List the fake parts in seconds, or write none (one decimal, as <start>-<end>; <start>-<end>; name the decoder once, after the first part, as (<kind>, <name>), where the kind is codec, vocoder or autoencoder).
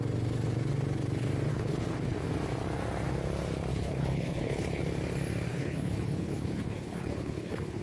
1.5-2.3 (codec, HILCodec); 3.7-4.8; 5.5-7.8